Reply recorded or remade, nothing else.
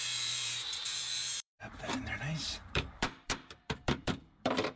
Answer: remade